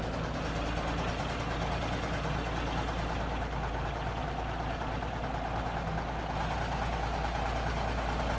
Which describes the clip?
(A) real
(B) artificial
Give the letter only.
A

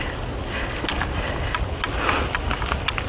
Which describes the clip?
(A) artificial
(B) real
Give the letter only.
B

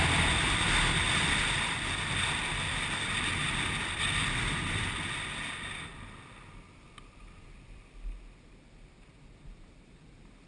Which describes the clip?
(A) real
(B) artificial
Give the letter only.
B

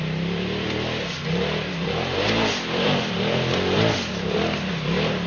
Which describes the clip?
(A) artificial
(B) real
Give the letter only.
A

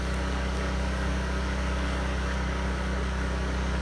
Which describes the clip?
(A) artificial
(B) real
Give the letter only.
A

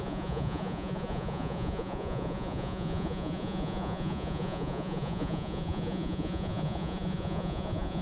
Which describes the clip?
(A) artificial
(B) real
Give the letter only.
A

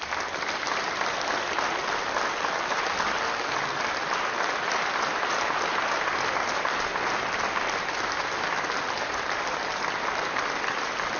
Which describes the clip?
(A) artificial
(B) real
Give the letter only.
B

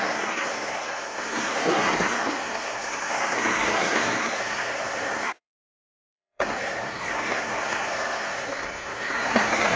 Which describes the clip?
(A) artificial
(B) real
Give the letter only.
A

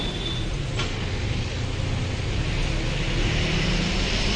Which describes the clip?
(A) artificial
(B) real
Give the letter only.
B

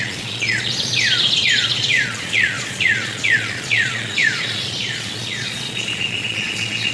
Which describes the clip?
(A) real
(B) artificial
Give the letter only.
B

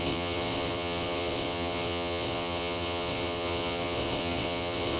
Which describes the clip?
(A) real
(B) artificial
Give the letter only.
B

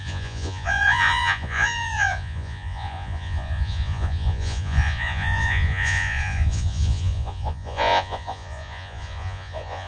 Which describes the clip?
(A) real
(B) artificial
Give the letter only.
B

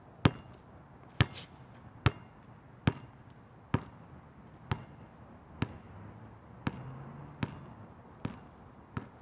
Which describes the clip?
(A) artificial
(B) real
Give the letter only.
B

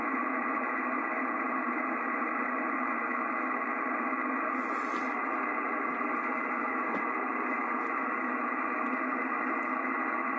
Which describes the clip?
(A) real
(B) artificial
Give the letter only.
A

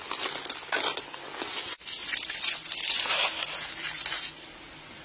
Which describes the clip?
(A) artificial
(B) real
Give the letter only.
B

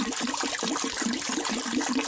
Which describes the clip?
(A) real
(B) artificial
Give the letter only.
B